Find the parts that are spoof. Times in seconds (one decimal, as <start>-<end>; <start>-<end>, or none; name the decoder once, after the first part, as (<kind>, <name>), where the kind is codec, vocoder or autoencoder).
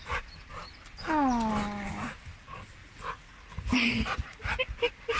2.8-4.6 (vocoder, Vocos)